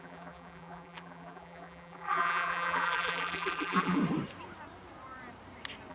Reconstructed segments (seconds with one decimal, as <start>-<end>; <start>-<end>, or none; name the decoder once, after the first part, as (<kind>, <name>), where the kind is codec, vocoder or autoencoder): 0.0-4.0 (vocoder, BigVGAN v2)